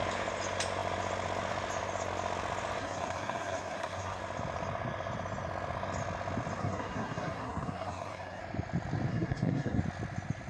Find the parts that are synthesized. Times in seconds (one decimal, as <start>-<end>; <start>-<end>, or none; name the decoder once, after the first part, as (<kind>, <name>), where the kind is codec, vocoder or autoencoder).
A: 2.8-4.2 (codec, SNAC); 6.6-8.4; 9.1-9.8